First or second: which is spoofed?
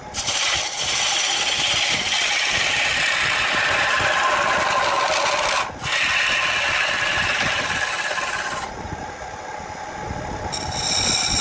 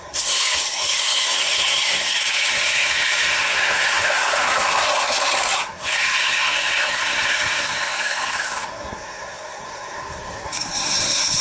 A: second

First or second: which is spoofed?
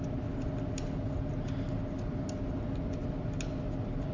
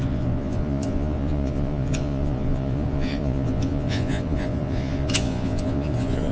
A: second